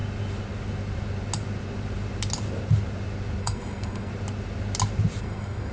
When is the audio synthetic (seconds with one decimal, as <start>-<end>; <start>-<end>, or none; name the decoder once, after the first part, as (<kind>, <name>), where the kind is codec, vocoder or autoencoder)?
3.4-4.1 (codec, SNAC); 5.2-5.7